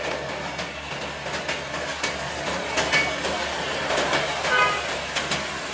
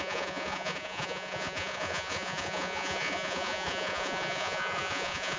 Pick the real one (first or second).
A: first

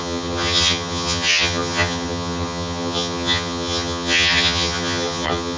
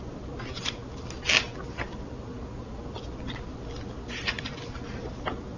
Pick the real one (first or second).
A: second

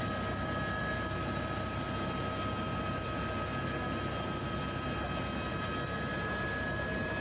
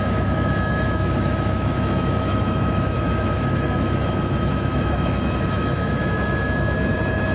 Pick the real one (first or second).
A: first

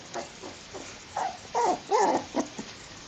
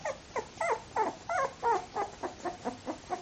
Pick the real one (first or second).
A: second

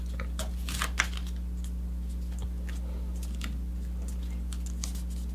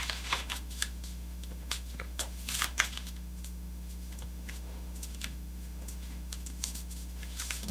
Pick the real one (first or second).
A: first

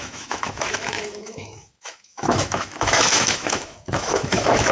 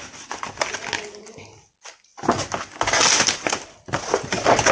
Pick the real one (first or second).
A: second